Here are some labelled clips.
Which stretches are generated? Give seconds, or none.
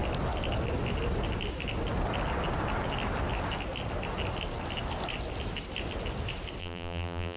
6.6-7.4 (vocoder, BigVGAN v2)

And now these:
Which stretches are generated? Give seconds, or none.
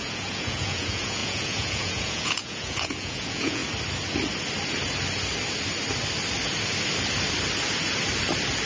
0.0-3.6 (vocoder, Vocos)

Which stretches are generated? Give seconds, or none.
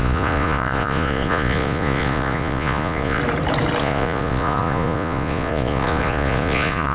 0.0-3.2 (vocoder, Vocos); 3.8-6.9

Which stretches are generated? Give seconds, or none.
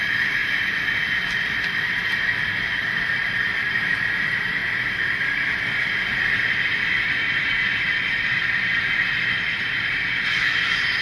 0.0-0.4 (vocoder, BigVGAN v2); 1.5-4.6; 5.5-11.0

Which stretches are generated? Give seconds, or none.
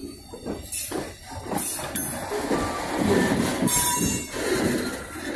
none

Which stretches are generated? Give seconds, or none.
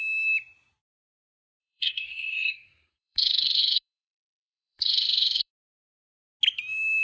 1.6-5.5 (codec, SNAC)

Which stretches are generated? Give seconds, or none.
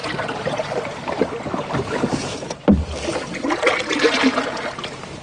none